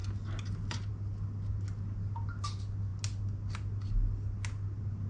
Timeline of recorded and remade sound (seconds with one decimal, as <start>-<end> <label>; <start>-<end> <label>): 0.0-5.1 recorded